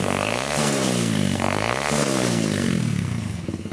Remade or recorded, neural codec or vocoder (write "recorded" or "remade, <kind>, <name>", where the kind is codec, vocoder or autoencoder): remade, codec, SNAC